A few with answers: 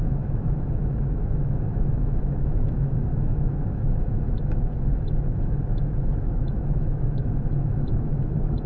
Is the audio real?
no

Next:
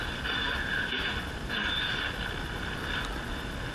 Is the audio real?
yes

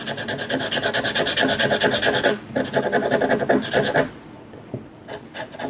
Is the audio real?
yes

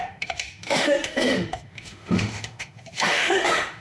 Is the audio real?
no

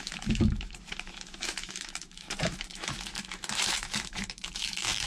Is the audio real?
no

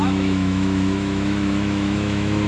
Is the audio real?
no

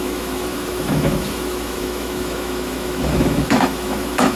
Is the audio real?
no